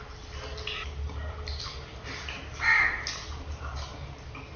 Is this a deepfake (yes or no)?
no